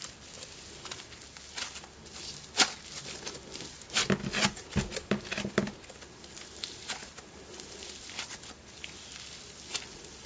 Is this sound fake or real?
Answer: real